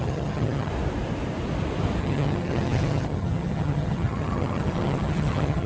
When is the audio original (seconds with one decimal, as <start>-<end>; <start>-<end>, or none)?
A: 0.7-2.0